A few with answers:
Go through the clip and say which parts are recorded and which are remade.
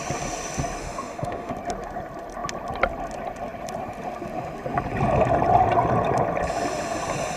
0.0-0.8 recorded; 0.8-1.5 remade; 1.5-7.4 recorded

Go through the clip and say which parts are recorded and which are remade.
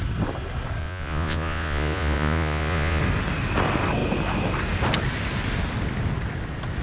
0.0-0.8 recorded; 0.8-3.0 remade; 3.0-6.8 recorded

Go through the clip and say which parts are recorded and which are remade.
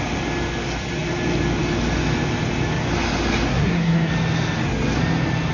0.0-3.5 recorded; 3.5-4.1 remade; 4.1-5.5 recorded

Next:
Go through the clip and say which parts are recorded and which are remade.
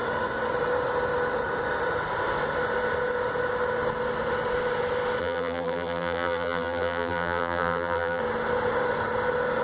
0.0-5.2 recorded; 5.2-8.2 remade; 8.2-9.6 recorded